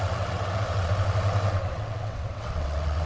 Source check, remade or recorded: remade